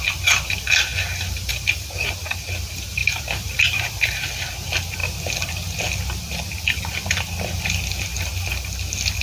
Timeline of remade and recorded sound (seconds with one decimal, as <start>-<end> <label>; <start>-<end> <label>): 0.0-3.0 recorded; 3.0-4.1 remade; 4.1-9.2 recorded